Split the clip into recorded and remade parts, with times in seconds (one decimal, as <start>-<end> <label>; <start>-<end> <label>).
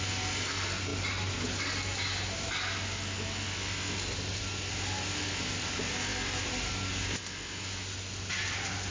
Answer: 0.0-8.9 recorded